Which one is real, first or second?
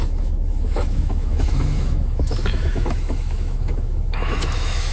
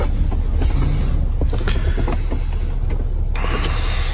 second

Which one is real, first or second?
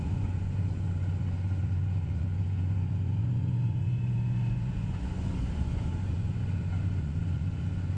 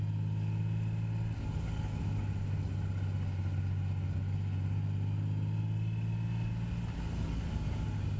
second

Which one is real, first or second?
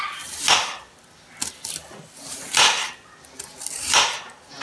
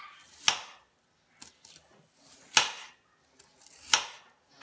second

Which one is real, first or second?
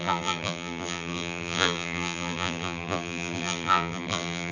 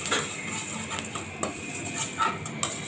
second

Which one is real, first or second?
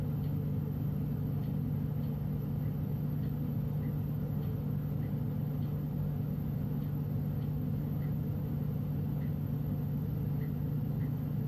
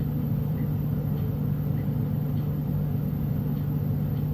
first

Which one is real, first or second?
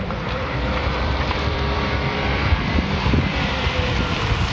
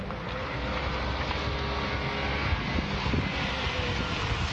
second